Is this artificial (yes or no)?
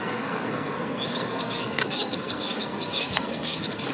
yes